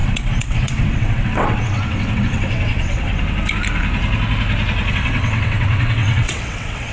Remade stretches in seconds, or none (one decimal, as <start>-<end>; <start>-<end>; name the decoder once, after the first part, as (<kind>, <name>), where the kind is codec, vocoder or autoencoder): 0.0-3.1 (vocoder, WaveNeXt); 4.9-6.9